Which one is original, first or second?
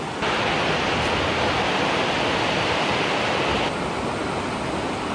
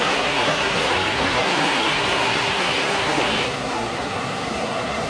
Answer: first